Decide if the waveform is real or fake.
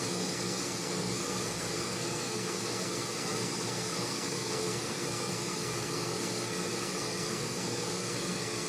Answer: fake